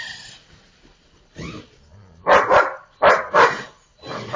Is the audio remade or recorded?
recorded